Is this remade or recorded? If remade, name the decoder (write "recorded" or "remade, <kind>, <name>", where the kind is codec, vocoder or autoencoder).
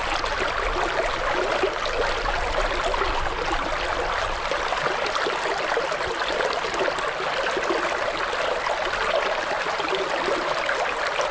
recorded